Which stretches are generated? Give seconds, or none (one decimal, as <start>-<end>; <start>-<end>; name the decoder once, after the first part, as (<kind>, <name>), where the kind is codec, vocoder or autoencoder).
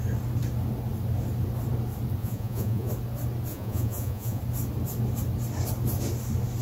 2.2-2.9 (vocoder, Vocos); 3.5-4.4